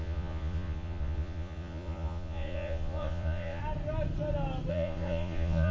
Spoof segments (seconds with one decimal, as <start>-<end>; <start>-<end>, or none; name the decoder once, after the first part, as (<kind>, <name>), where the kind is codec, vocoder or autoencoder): 0.0-3.6 (vocoder, Vocos); 4.7-5.7